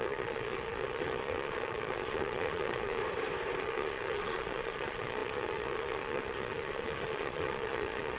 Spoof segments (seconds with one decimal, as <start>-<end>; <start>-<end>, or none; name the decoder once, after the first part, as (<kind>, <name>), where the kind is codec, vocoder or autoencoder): 0.0-3.0 (vocoder, Vocos); 3.6-8.2